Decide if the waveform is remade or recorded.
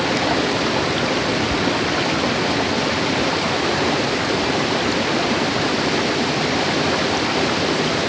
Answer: recorded